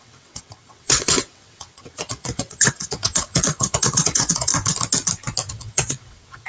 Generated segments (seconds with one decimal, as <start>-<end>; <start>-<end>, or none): 0.0-4.5; 5.5-6.5